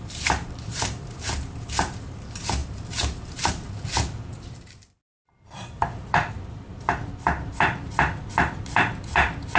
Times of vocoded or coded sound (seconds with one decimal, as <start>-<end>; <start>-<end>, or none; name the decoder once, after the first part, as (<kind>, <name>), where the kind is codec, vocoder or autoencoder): 0.0-9.6 (vocoder, BigVGAN v2)